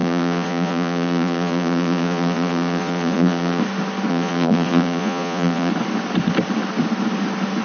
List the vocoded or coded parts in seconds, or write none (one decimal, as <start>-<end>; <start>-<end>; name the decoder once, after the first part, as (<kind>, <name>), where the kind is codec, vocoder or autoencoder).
0.0-3.6 (vocoder, Vocos); 4.1-5.7